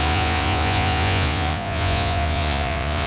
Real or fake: fake